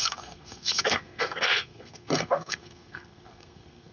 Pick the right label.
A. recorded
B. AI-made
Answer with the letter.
B